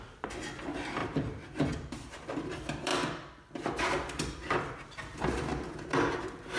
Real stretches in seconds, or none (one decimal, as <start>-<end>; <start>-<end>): 2.9-3.8